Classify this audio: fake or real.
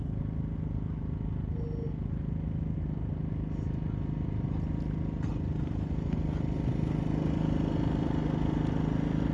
real